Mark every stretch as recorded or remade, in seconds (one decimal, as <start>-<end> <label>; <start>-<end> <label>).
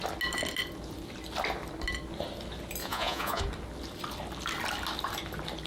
0.0-2.8 recorded; 2.8-3.4 remade; 3.4-5.7 recorded